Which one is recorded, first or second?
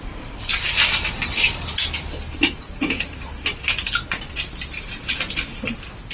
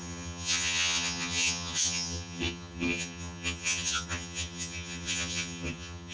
first